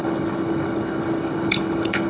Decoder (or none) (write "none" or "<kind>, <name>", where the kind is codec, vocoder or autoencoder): codec, HILCodec